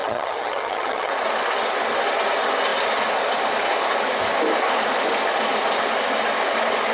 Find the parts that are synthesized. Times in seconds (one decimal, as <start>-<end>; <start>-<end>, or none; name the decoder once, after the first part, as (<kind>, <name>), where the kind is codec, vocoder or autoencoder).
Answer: 0.0-1.1 (vocoder, HiFi-GAN)